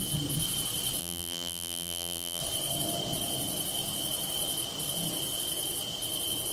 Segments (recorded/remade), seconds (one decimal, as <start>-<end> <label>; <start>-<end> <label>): 0.0-1.0 recorded; 1.0-2.4 remade; 2.4-6.5 recorded